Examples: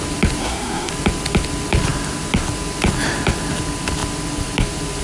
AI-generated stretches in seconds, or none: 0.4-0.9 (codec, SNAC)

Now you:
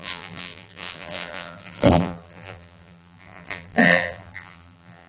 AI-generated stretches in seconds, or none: 0.0-5.1 (vocoder, BigVGAN v2)